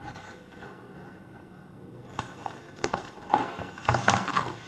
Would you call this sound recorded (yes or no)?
no